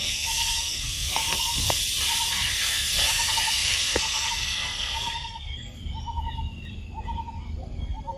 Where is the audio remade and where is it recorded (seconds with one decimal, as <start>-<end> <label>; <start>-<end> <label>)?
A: 0.0-1.8 remade; 1.8-2.3 recorded; 2.3-5.8 remade; 5.8-7.6 recorded; 7.6-8.2 remade